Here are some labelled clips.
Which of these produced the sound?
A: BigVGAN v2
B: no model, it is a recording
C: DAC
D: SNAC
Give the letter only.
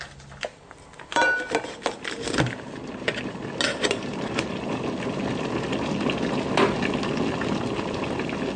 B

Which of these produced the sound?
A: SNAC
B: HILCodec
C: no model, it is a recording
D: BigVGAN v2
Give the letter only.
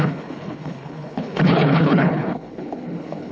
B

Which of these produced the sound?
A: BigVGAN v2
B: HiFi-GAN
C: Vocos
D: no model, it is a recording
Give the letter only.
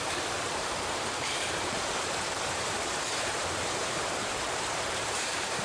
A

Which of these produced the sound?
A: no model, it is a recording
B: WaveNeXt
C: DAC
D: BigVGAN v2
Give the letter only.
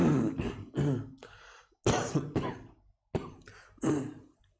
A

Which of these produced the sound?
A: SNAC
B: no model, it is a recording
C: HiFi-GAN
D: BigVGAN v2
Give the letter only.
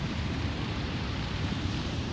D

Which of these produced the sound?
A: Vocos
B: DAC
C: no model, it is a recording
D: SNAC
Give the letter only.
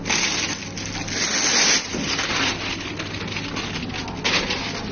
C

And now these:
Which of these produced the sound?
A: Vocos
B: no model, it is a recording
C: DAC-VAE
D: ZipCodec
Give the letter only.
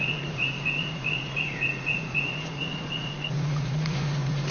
A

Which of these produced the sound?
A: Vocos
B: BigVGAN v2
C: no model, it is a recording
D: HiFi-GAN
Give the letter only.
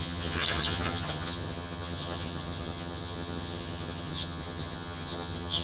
D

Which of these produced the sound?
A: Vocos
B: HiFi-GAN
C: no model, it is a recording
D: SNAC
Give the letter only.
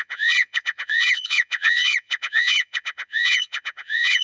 A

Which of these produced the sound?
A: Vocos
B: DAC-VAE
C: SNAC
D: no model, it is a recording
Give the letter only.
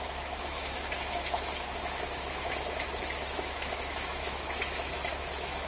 B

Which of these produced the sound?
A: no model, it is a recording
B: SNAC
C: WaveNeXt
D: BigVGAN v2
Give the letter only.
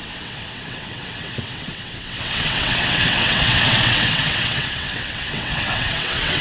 C